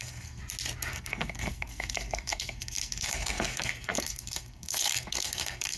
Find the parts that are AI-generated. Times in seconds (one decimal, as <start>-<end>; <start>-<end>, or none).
0.0-0.4; 0.9-5.8